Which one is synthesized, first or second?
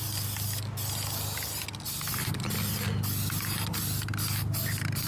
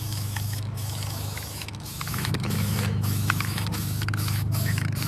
second